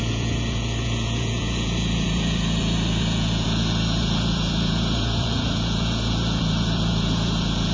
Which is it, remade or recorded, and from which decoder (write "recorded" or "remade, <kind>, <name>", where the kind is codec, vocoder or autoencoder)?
remade, vocoder, Vocos